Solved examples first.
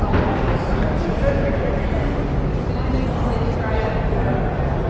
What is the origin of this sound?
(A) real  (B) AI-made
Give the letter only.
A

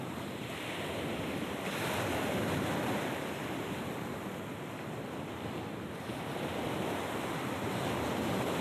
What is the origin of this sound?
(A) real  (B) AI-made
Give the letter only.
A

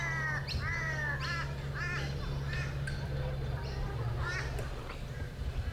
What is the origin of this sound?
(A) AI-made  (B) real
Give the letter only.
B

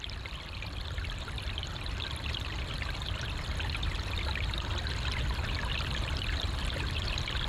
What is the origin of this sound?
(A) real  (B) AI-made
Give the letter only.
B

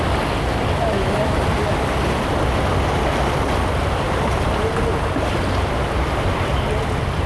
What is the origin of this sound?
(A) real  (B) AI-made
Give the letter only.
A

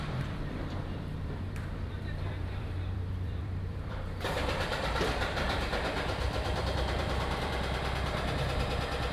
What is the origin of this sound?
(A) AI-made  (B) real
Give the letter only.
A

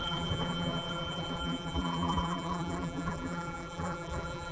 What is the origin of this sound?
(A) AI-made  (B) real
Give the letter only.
A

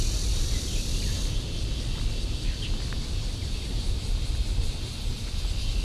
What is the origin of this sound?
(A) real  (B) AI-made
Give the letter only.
B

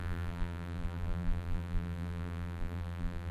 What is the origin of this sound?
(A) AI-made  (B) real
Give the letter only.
A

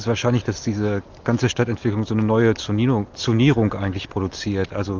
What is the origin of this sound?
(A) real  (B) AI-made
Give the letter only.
A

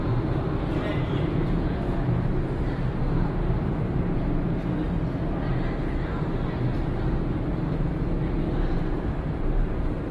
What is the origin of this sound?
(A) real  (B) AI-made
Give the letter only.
B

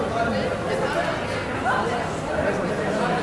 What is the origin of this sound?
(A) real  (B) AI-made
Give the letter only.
A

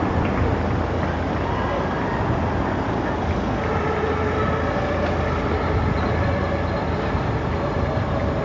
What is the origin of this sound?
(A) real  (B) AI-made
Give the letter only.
A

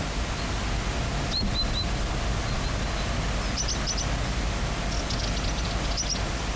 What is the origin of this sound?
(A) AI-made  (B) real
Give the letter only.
B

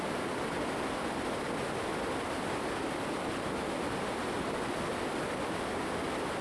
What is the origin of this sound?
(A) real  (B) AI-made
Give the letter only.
A